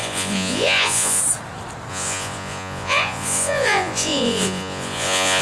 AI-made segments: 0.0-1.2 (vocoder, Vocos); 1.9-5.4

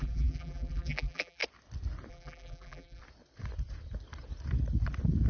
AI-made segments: 0.0-1.4 (vocoder, BigVGAN v2); 2.1-3.0